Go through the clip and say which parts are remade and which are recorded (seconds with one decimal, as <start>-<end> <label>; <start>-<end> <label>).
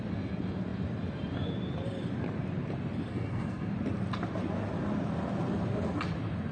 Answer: 0.0-3.1 recorded; 3.1-3.7 remade; 3.7-6.5 recorded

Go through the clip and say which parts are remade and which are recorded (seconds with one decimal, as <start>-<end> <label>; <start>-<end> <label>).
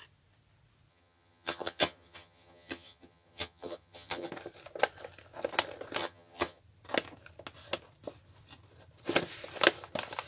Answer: 0.0-0.9 recorded; 0.9-4.3 remade; 4.3-6.0 recorded; 6.0-6.6 remade; 6.6-10.3 recorded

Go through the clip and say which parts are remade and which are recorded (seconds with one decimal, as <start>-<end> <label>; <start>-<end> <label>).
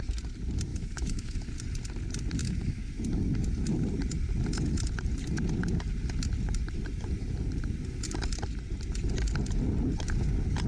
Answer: 0.0-0.7 recorded; 0.7-1.5 remade; 1.5-2.4 recorded; 2.4-3.0 remade; 3.0-10.7 recorded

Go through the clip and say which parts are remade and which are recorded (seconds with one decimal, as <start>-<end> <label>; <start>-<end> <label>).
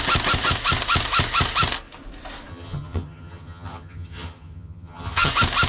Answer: 0.0-2.5 recorded; 2.5-5.3 remade; 5.3-5.7 recorded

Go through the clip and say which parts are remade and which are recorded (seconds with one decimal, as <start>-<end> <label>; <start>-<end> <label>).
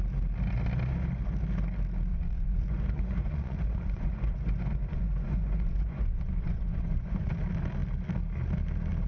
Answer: 0.0-2.1 recorded; 2.1-7.3 remade; 7.3-9.1 recorded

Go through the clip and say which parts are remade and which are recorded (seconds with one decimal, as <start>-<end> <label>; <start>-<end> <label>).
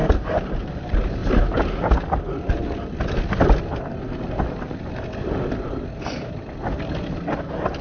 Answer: 0.0-7.8 recorded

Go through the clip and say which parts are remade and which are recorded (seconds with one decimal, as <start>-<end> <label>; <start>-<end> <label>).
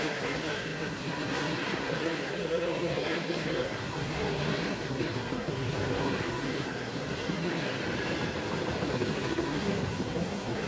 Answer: 0.0-7.8 remade; 7.8-8.9 recorded; 8.9-10.7 remade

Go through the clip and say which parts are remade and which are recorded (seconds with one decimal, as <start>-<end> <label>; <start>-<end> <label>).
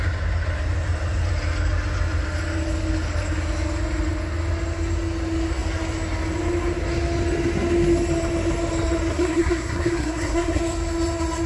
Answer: 0.0-9.1 recorded; 9.1-10.6 remade; 10.6-11.5 recorded